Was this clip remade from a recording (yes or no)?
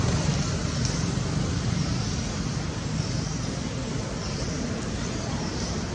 no